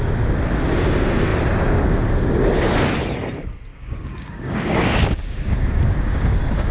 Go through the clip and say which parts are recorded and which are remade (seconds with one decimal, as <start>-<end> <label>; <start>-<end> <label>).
0.0-3.7 recorded; 3.7-6.7 remade